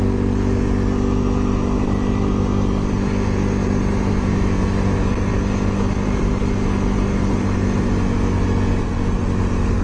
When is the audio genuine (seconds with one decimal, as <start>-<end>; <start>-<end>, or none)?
0.0-9.8

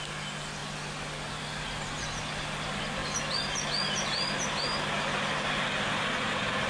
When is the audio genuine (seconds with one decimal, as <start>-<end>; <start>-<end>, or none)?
0.0-6.7